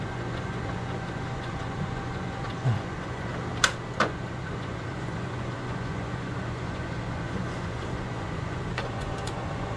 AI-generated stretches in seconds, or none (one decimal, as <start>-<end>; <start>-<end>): 0.0-3.3; 4.0-9.8